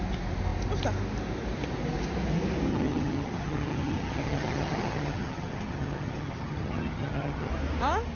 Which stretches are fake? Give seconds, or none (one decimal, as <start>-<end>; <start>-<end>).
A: 2.7-7.5